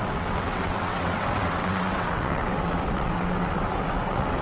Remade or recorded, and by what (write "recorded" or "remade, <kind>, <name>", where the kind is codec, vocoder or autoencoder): remade, vocoder, WaveNeXt